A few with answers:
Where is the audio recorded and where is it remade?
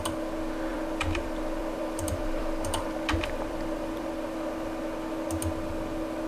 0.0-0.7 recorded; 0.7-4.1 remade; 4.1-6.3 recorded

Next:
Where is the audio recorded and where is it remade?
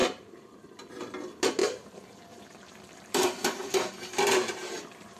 0.0-0.9 remade; 0.9-1.6 recorded; 1.6-3.9 remade; 3.9-4.4 recorded; 4.4-5.2 remade